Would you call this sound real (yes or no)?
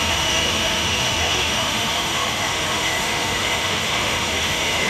no